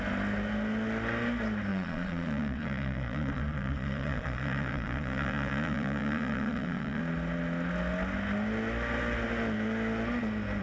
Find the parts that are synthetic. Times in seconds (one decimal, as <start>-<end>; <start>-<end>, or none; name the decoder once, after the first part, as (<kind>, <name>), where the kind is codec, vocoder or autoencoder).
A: 1.7-7.0 (vocoder, Vocos)